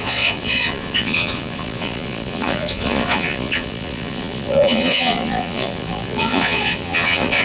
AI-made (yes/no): yes